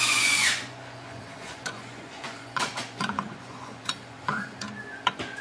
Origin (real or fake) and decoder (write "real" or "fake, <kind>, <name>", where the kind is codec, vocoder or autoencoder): fake, vocoder, Vocos